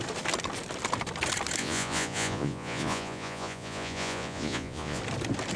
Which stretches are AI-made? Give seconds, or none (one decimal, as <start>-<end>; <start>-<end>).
1.6-5.0